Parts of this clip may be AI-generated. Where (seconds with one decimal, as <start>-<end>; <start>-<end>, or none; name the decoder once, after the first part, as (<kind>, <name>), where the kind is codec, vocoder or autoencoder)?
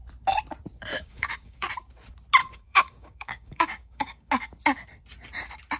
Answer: 0.9-1.7 (codec, DAC); 2.4-4.3